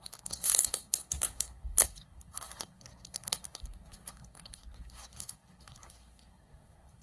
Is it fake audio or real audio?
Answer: fake